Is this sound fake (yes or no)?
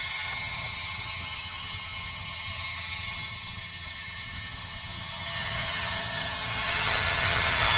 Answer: yes